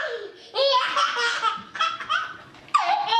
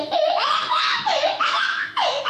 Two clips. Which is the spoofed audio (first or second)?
second